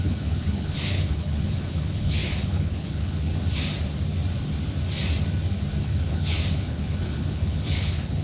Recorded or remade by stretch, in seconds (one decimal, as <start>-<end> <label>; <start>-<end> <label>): 0.0-3.3 remade; 3.3-5.8 recorded; 5.8-8.2 remade